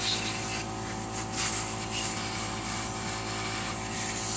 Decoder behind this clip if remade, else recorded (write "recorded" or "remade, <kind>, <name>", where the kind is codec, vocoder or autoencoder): remade, vocoder, BigVGAN v2